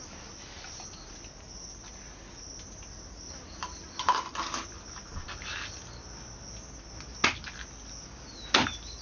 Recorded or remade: recorded